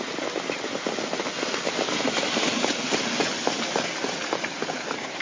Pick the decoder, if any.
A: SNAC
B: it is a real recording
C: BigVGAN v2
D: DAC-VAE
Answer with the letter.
B